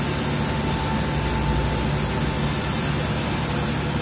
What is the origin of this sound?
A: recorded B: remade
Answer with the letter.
A